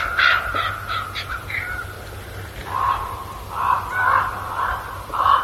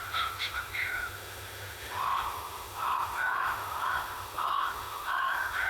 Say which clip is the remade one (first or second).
second